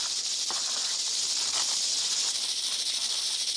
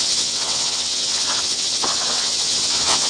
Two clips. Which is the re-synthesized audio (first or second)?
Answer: second